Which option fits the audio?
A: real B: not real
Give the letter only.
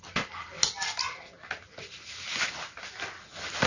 A